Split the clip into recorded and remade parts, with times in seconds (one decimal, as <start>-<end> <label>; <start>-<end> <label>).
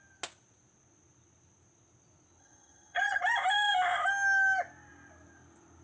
0.0-2.4 recorded; 2.4-3.2 remade; 3.2-5.8 recorded